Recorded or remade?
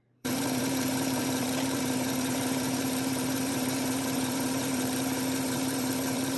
remade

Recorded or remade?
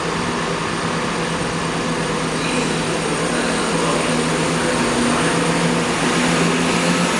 recorded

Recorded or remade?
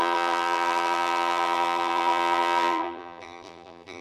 remade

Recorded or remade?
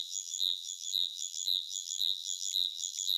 remade